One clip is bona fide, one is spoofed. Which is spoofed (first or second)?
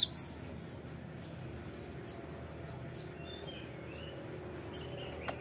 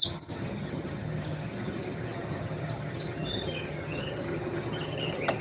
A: second